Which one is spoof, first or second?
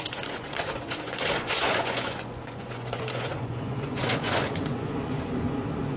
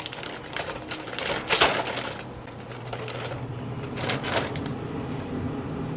first